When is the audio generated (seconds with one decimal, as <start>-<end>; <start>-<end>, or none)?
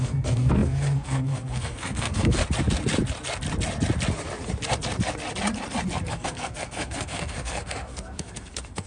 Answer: 0.0-2.4; 6.1-8.9